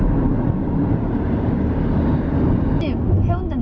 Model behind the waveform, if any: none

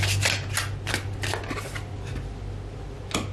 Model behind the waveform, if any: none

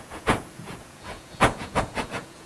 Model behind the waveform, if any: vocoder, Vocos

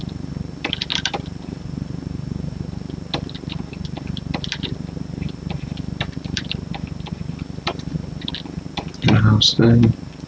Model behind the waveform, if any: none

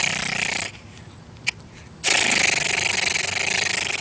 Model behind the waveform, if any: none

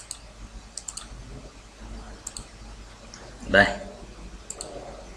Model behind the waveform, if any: none